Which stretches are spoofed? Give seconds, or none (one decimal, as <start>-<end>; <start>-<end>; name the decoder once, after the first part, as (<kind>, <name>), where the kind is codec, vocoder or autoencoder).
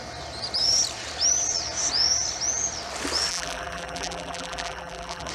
3.3-5.3 (vocoder, BigVGAN v2)